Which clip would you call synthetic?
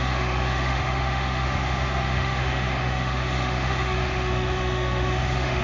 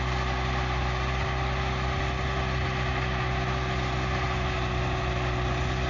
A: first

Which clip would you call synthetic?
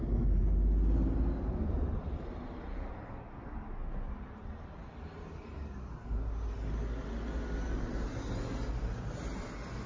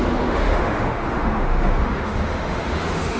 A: second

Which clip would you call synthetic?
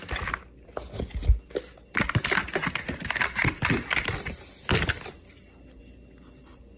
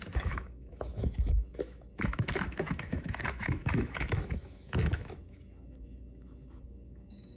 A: second